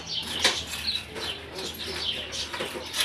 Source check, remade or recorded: recorded